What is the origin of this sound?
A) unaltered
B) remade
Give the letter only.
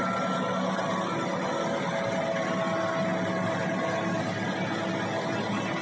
A